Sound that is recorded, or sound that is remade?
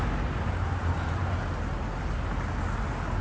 recorded